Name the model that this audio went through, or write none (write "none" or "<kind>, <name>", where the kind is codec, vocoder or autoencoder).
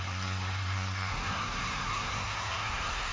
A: codec, SNAC